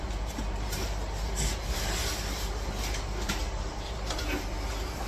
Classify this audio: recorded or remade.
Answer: remade